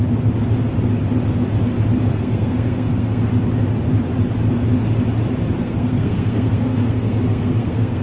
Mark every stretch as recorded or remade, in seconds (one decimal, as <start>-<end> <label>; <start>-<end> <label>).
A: 0.0-2.1 recorded; 2.1-3.3 remade; 3.3-5.6 recorded; 5.6-8.0 remade